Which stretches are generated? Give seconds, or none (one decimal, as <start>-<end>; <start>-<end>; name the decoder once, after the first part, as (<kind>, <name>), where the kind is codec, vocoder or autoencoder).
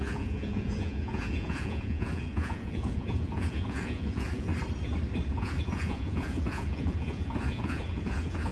0.0-4.5 (vocoder, Vocos); 5.3-8.5